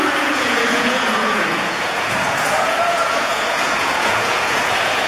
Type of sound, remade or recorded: remade